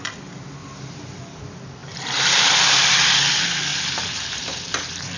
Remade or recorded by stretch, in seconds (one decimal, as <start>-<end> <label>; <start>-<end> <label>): 0.0-0.6 recorded; 0.6-1.4 remade; 1.4-1.8 recorded; 1.8-2.5 remade; 2.5-3.7 recorded; 3.7-5.2 remade